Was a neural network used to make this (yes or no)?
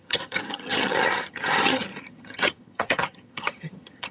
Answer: yes